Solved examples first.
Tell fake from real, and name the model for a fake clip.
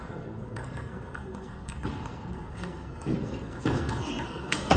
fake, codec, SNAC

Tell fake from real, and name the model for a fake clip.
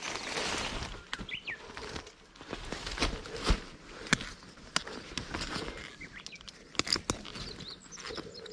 real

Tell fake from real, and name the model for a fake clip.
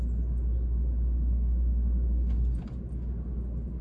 real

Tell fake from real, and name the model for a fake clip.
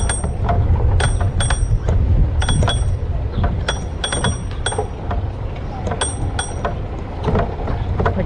real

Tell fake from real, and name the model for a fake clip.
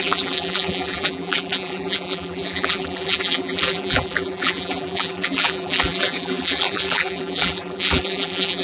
fake, vocoder, BigVGAN v2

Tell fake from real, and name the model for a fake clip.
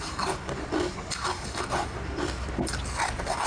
real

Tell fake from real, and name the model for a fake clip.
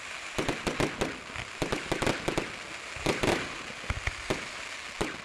real